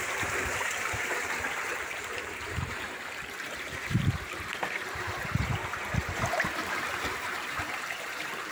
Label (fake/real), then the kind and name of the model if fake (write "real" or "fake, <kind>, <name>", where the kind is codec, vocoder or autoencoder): fake, vocoder, BigVGAN v2